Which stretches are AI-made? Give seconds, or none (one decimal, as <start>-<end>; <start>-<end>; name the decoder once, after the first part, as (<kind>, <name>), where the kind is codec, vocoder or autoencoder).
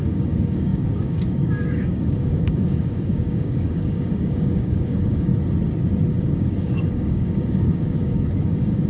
0.0-5.3 (codec, DAC); 6.2-8.9